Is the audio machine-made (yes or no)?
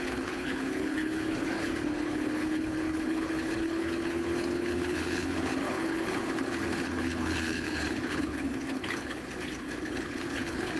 yes